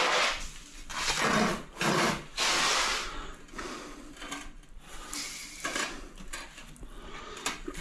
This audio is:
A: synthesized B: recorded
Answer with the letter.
A